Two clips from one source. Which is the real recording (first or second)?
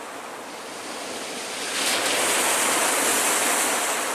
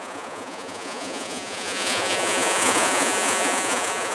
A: first